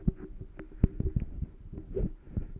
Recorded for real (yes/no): yes